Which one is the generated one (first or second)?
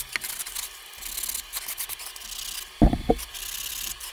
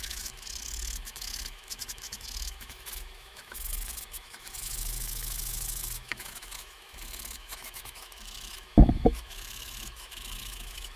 second